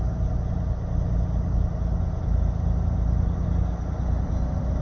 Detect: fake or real real